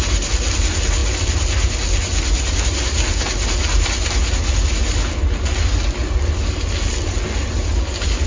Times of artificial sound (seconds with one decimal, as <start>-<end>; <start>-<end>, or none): none